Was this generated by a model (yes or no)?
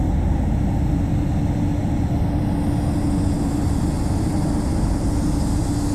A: no